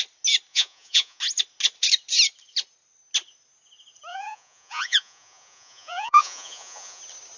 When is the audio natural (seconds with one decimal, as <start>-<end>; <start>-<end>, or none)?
0.0-0.5; 1.2-4.1; 7.0-7.4